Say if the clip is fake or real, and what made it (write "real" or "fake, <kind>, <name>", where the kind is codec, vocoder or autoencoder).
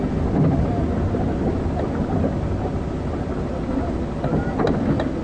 real